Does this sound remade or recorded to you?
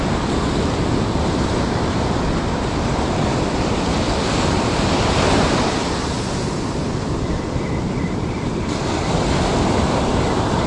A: remade